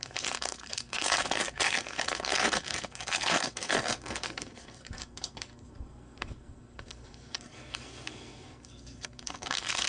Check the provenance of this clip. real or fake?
fake